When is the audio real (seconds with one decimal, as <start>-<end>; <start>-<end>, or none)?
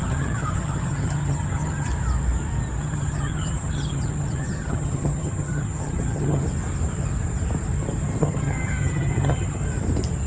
1.9-2.8; 6.4-8.2; 9.6-10.3